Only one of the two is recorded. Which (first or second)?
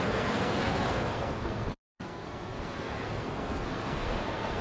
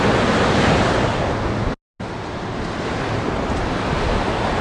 second